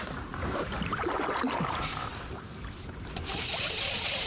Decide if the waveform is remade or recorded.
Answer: remade